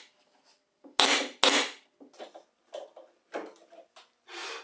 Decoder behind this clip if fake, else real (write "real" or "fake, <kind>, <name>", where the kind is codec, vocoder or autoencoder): real